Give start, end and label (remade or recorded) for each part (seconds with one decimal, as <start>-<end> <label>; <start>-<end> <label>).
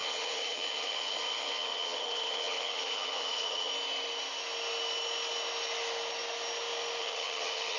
0.0-3.7 remade; 3.7-7.0 recorded; 7.0-7.8 remade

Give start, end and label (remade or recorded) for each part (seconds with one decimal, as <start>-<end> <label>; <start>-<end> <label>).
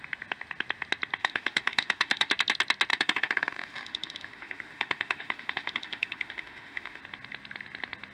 0.0-1.2 recorded; 1.2-2.3 remade; 2.3-2.9 recorded; 2.9-7.0 remade; 7.0-8.1 recorded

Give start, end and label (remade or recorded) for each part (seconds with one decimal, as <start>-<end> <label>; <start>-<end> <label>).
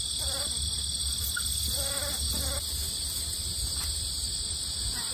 0.0-5.1 recorded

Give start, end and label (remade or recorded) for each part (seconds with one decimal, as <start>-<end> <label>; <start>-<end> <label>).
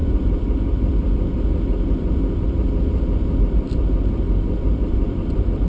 0.0-5.7 remade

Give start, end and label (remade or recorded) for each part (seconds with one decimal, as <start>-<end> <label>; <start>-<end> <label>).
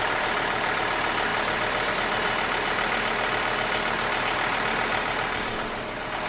0.0-6.3 recorded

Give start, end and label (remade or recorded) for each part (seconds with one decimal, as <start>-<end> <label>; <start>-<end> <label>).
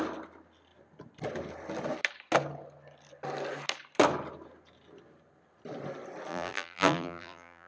0.0-6.3 recorded; 6.3-7.7 remade